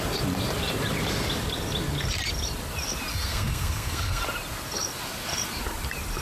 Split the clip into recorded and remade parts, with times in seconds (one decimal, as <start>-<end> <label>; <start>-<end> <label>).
0.0-3.1 recorded; 3.1-4.2 remade; 4.2-6.2 recorded